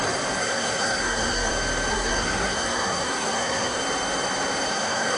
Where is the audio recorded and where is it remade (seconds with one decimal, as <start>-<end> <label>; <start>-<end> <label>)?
0.0-0.4 recorded; 0.4-1.5 remade; 1.5-1.9 recorded; 1.9-3.8 remade; 3.8-4.7 recorded; 4.7-5.2 remade